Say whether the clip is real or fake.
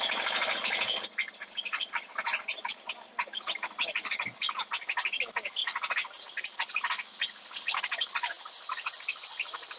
real